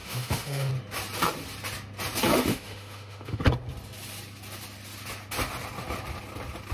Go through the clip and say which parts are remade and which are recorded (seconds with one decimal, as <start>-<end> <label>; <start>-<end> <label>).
0.0-0.7 remade; 0.7-2.5 recorded; 2.5-3.4 remade; 3.4-6.7 recorded